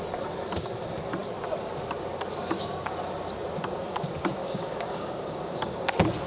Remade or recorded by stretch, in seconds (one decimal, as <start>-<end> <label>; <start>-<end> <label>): 0.0-4.4 recorded; 4.4-5.8 remade; 5.8-6.3 recorded